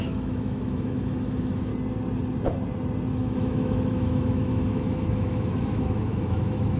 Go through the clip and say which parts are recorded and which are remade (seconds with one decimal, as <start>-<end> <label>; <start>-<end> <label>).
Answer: 0.0-1.7 remade; 1.7-3.1 recorded; 3.1-6.8 remade